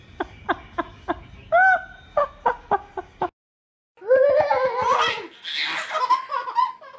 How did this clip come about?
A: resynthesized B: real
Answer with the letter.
B